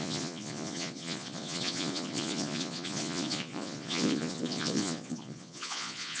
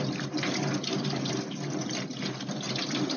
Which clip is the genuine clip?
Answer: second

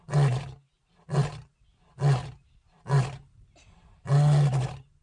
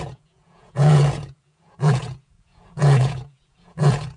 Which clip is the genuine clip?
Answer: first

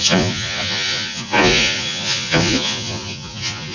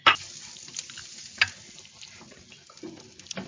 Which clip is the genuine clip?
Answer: second